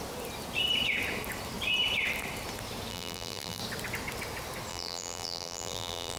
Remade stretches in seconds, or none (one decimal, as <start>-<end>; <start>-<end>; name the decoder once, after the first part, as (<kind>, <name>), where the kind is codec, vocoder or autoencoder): 2.9-3.6 (vocoder, BigVGAN v2); 4.7-6.2